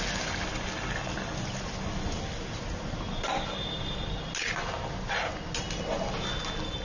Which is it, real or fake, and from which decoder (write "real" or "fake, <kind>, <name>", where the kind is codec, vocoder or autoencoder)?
real